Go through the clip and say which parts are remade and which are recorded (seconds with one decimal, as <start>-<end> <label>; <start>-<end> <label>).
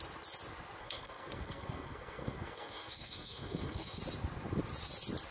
0.0-0.8 recorded; 0.8-4.0 remade; 4.0-5.3 recorded